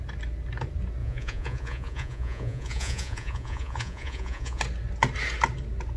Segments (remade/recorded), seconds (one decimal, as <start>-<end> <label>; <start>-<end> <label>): 0.0-1.0 recorded; 1.0-4.6 remade; 4.6-6.0 recorded